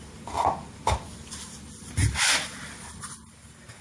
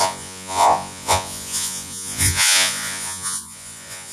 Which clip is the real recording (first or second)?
first